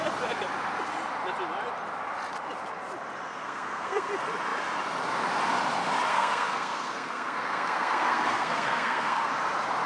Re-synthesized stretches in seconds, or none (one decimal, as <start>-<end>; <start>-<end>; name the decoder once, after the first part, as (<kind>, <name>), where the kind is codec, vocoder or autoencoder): 3.3-4.1 (codec, SNAC); 6.1-9.3